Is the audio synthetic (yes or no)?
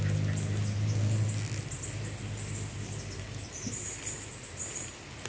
no